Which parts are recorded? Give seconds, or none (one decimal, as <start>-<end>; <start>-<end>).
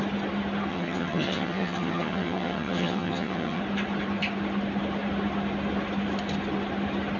0.0-0.7; 3.6-7.2